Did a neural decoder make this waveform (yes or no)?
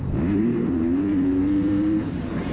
yes